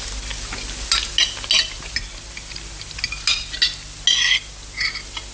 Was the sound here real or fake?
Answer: real